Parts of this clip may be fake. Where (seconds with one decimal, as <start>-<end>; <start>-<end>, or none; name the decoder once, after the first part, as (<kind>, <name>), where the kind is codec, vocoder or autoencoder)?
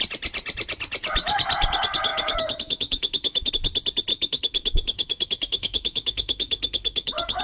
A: 2.1-3.5 (autoencoder, DAC-VAE); 4.1-7.4